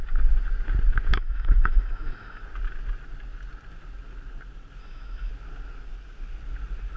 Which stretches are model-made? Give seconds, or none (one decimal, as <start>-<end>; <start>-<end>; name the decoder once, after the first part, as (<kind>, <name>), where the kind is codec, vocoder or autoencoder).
1.1-2.4 (autoencoder, DAC-VAE); 4.8-5.3